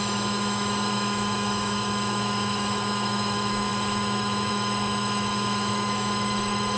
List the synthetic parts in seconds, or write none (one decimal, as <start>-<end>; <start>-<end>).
0.0-6.8